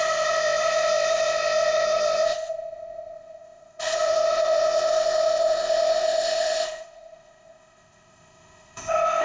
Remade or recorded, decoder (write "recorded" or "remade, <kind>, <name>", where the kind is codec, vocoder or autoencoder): remade, codec, ZipCodec